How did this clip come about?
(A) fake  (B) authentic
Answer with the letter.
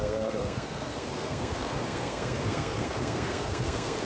A